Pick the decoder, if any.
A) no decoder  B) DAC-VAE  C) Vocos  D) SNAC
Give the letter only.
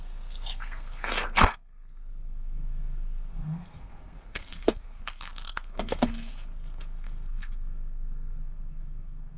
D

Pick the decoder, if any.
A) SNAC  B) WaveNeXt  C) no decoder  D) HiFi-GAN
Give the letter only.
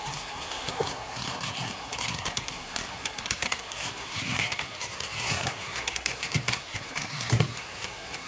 A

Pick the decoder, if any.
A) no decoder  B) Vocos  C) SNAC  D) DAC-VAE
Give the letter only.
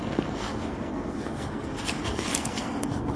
C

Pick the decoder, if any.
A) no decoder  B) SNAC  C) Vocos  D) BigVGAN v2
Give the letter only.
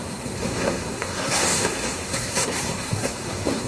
B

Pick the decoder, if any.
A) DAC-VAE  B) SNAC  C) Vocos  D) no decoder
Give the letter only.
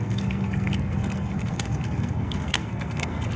B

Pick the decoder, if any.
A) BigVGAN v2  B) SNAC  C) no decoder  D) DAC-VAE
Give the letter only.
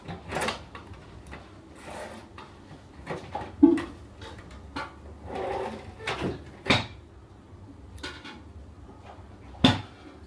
C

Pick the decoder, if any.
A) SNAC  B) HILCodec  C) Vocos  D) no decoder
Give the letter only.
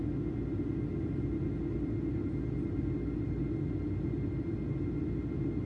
D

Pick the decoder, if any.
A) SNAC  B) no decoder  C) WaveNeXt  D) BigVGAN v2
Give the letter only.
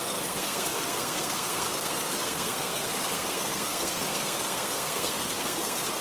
A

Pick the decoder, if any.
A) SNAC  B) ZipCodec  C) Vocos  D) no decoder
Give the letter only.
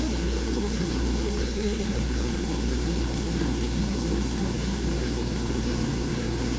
A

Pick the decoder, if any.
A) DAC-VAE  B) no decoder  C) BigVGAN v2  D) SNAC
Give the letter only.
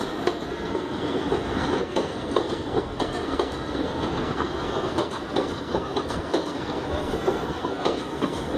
D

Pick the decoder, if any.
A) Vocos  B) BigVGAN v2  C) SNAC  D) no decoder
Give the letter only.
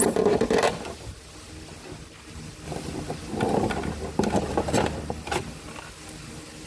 D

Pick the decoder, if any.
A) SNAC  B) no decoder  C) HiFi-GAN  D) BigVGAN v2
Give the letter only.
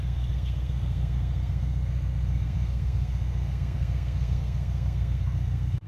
A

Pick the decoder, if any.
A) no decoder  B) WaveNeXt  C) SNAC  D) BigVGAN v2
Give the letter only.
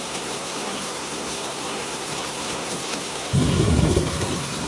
C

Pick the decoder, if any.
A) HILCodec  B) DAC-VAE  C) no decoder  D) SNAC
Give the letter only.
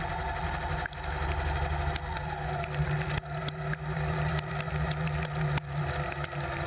C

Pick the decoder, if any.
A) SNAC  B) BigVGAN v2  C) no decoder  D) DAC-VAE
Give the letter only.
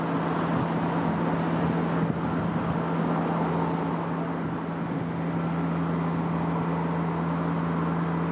C